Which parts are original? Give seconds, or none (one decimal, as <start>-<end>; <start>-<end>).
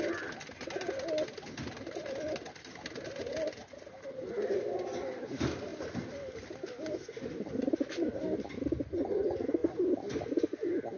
0.0-11.0